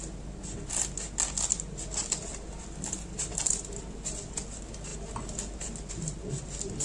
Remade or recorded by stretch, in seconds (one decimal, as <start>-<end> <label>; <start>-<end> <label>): 0.0-6.8 recorded